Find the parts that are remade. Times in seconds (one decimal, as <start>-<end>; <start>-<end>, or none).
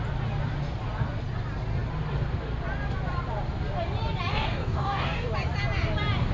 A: 4.3-5.3